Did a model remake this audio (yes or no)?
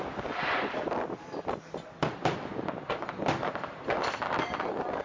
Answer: yes